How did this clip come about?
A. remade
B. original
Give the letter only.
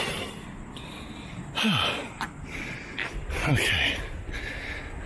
B